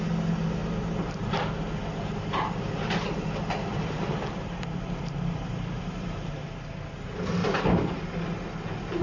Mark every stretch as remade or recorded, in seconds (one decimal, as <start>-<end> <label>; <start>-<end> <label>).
0.0-0.6 recorded; 0.6-1.3 remade; 1.3-1.8 recorded; 1.8-6.3 remade; 6.3-7.4 recorded; 7.4-8.0 remade; 8.0-9.0 recorded